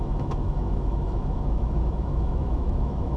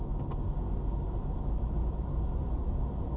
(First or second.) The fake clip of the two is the first